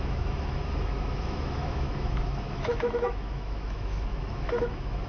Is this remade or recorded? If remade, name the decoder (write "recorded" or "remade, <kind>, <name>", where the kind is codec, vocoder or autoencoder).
remade, autoencoder, DAC-VAE